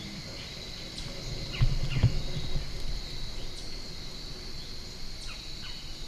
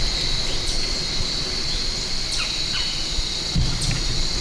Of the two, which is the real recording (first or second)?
first